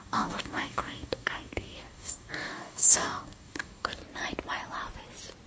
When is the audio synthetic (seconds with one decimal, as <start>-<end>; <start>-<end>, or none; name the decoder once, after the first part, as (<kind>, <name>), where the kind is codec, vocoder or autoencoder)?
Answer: 0.0-4.0 (codec, DAC)